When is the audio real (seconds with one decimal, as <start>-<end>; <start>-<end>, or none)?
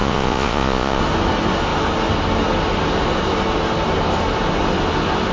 1.0-5.3